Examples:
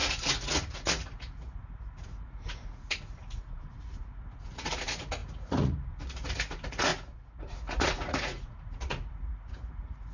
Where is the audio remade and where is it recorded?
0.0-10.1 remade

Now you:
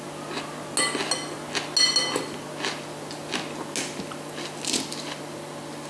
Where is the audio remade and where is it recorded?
0.0-5.9 recorded

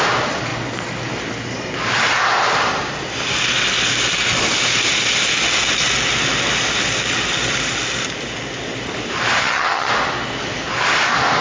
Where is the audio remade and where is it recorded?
0.0-9.4 recorded; 9.4-9.9 remade; 9.9-11.4 recorded

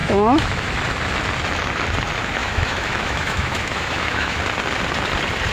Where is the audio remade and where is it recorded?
0.0-0.7 remade; 0.7-2.4 recorded; 2.4-4.4 remade; 4.4-5.5 recorded